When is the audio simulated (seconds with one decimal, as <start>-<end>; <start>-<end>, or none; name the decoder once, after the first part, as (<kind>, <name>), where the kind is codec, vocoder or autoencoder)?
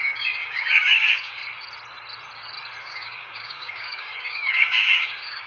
0.0-1.4 (codec, DAC); 2.8-5.5